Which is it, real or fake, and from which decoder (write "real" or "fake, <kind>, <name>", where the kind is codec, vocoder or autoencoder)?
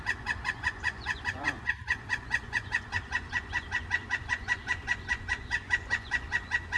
fake, vocoder, Vocos